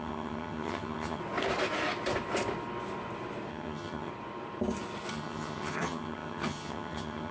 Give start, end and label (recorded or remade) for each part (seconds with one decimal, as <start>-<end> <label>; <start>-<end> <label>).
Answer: 0.0-1.2 remade; 1.2-3.5 recorded; 3.5-4.1 remade; 4.1-5.1 recorded; 5.1-7.3 remade